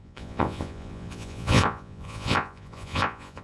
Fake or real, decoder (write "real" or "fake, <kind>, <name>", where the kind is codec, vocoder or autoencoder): fake, vocoder, Vocos